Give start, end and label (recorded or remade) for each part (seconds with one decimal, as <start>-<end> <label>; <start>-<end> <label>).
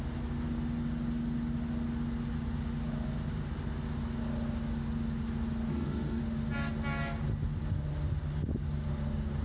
0.0-5.7 recorded; 5.7-6.2 remade; 6.2-9.4 recorded